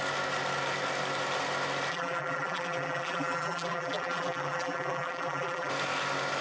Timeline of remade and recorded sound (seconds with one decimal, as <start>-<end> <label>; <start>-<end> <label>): 0.0-1.9 recorded; 1.9-5.7 remade; 5.7-6.4 recorded